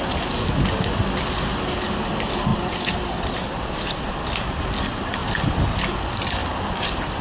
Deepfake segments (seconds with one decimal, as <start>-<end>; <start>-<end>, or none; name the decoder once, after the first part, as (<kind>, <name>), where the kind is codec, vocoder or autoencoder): 2.5-4.6 (vocoder, BigVGAN v2)